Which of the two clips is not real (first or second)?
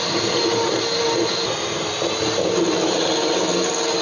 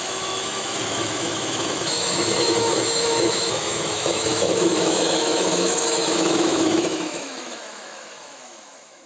second